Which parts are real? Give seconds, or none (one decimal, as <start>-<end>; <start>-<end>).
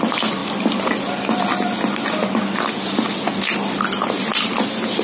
0.0-5.0